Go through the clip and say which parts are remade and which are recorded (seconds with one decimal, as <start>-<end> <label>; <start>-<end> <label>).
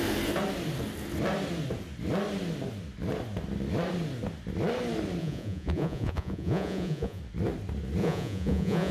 0.0-5.2 recorded; 5.2-7.2 remade; 7.2-8.0 recorded; 8.0-8.9 remade